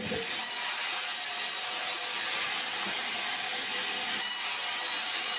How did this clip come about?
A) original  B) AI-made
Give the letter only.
A